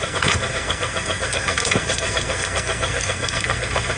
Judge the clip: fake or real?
fake